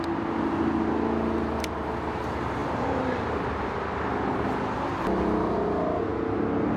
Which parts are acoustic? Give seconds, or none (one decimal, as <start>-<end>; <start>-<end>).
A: 0.0-6.1